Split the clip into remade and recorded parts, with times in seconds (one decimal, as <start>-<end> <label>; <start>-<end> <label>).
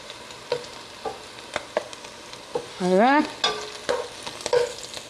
0.0-2.7 recorded; 2.7-3.2 remade; 3.2-5.1 recorded